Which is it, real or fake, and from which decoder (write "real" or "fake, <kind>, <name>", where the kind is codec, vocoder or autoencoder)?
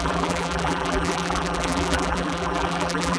fake, vocoder, BigVGAN v2